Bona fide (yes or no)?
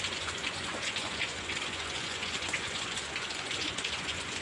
no